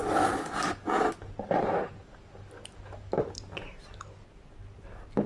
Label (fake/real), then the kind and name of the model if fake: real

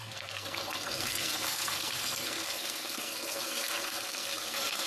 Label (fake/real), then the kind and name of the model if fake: fake, codec, SNAC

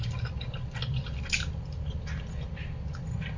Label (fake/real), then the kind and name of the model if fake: real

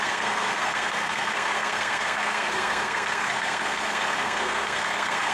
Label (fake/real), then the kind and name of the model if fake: fake, codec, SNAC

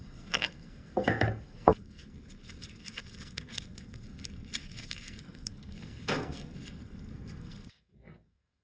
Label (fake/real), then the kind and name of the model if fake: fake, codec, SNAC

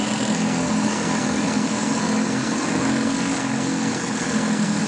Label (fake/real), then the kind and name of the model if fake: fake, codec, SNAC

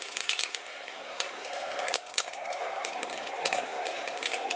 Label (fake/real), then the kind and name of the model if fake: fake, codec, SNAC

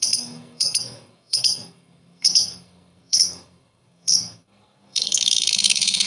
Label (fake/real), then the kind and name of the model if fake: fake, codec, SNAC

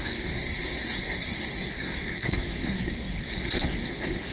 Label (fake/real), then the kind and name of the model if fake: fake, codec, SNAC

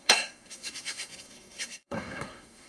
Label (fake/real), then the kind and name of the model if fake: fake, codec, SNAC